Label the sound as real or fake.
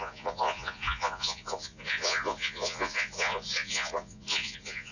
fake